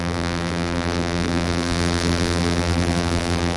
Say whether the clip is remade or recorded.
remade